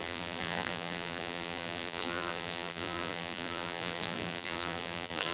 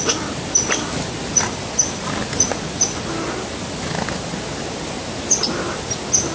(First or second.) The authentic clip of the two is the second